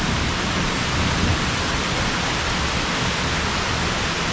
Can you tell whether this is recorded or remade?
recorded